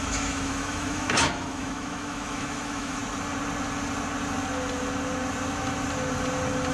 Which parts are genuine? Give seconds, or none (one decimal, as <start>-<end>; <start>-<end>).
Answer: 3.0-6.7